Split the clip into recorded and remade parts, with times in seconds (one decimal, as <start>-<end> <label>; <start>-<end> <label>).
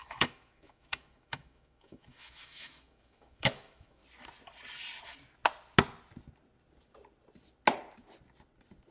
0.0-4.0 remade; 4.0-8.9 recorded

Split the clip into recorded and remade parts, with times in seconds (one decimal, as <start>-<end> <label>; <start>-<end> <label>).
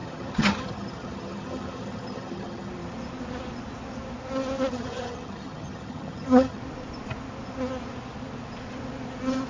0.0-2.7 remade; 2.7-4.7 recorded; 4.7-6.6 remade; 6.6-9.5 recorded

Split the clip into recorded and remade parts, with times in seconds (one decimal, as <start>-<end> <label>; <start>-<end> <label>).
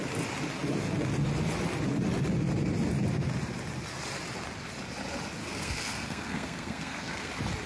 0.0-5.4 recorded; 5.4-7.3 remade; 7.3-7.7 recorded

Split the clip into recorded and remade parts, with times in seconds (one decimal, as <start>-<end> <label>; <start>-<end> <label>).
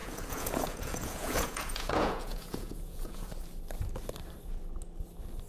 0.0-3.3 remade; 3.3-5.5 recorded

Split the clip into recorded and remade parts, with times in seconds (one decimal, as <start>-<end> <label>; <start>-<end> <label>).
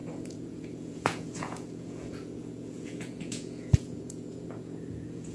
0.0-5.3 remade